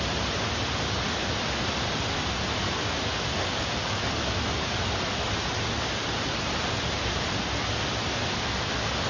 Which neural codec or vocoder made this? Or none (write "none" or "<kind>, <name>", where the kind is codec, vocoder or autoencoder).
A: none